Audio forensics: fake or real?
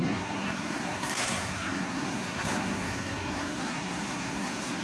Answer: fake